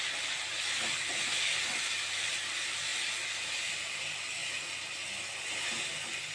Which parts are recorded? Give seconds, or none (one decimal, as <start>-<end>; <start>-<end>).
0.0-6.3